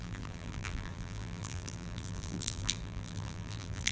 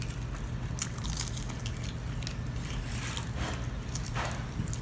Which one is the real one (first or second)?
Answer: second